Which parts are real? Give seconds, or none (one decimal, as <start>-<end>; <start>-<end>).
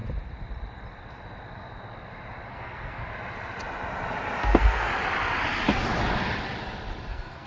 0.0-2.5; 3.1-4.4; 4.9-7.1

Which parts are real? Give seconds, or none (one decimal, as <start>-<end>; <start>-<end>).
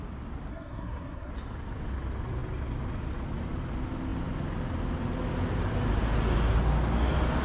0.0-0.5; 1.3-7.4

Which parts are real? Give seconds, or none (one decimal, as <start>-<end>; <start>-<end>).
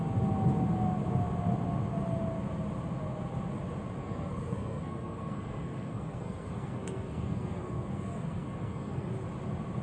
0.0-4.0; 9.1-9.8